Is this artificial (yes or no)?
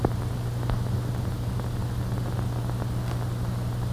no